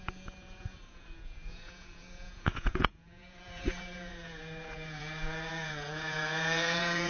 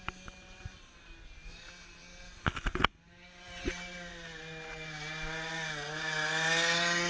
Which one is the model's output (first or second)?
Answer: first